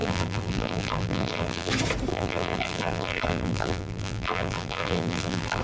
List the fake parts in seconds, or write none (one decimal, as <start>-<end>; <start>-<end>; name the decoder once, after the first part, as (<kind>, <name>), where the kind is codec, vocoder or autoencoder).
0.0-1.7 (vocoder, BigVGAN v2); 2.1-5.6